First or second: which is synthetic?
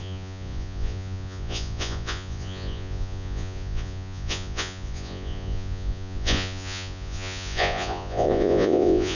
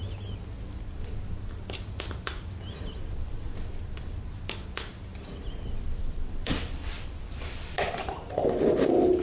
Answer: first